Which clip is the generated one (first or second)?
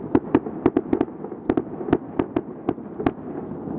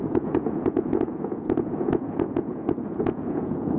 second